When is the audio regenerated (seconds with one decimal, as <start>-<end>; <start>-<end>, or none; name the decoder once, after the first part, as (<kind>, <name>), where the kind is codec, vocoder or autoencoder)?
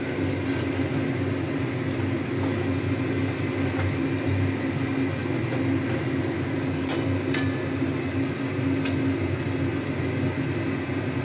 none